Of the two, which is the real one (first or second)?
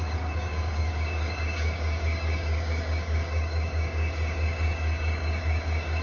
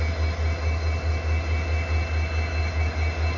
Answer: second